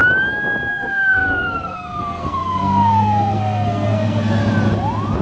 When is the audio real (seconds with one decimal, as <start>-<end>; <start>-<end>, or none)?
0.0-0.7; 4.4-5.2